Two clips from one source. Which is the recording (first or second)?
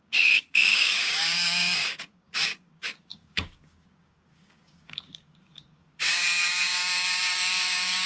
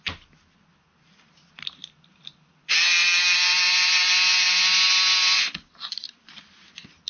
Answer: second